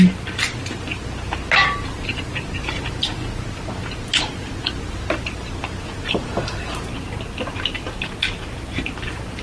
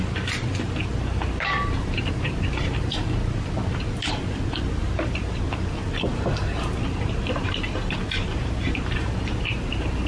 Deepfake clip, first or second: second